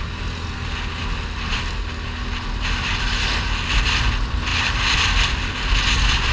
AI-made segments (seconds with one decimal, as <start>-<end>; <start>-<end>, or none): none

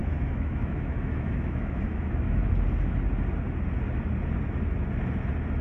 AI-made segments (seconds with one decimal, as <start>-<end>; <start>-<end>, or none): 0.0-2.5

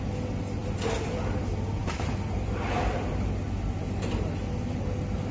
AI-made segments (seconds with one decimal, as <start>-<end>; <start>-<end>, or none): none

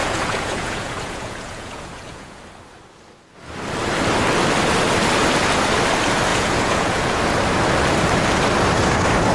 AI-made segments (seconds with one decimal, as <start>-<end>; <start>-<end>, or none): 0.0-2.4; 6.3-7.2

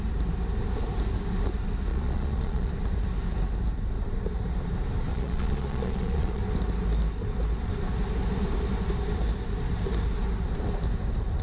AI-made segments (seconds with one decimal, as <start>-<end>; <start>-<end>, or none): 1.9-2.7; 5.1-6.4

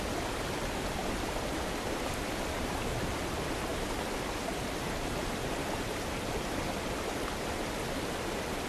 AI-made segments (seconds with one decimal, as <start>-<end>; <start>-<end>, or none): 0.0-3.7